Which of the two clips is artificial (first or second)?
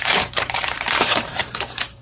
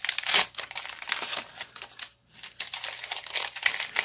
first